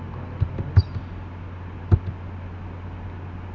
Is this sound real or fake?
real